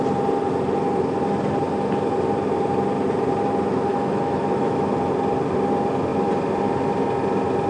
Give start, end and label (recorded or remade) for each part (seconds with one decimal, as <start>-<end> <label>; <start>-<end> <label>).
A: 0.0-3.9 recorded; 3.9-4.9 remade; 4.9-7.7 recorded